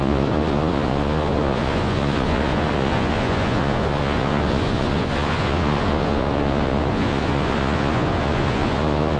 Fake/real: fake